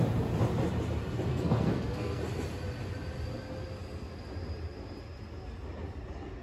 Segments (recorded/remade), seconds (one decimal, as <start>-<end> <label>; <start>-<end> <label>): 0.0-1.3 recorded; 1.3-2.2 remade; 2.2-6.4 recorded